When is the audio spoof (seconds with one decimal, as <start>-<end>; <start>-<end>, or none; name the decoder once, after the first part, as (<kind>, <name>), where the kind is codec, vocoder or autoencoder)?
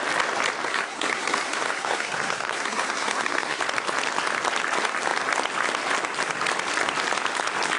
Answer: 0.7-3.6 (codec, SNAC)